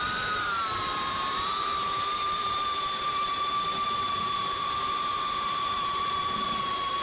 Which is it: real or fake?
fake